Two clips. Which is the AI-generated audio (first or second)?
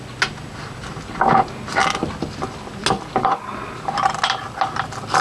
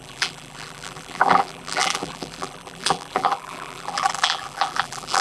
second